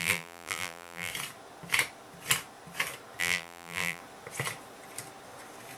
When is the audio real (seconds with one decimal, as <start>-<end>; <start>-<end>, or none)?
1.1-3.2; 4.0-5.8